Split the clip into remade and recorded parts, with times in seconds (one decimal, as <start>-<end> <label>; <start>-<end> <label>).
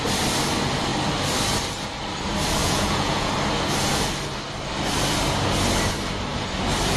0.0-2.6 recorded; 2.6-3.3 remade; 3.3-7.0 recorded